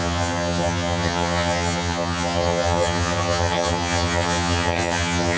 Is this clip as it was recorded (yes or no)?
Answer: no